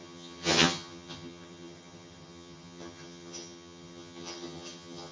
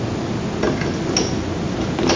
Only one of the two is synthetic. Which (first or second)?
first